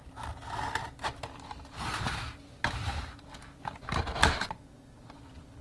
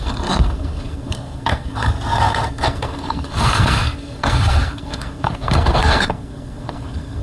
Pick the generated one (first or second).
second